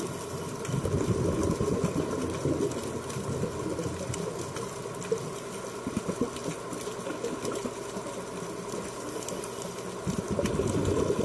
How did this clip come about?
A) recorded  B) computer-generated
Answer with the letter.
A